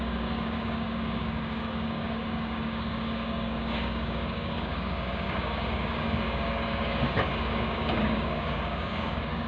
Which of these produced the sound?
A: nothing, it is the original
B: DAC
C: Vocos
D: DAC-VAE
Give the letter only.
B